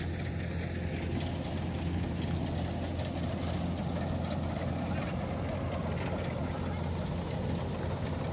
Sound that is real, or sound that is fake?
real